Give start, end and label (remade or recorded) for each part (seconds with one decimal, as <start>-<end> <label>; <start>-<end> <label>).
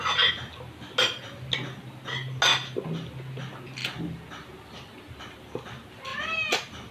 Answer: 0.0-6.9 recorded